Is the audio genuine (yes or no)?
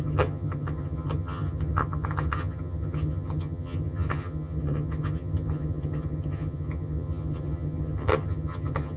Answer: no